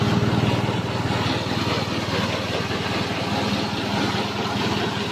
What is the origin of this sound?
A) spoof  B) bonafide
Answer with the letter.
B